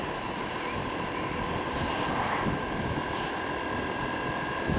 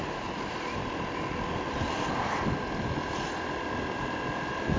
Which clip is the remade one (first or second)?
first